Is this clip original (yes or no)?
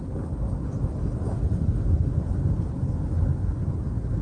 yes